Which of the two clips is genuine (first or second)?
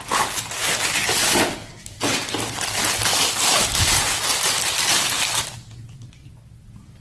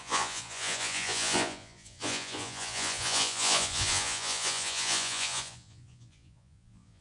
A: first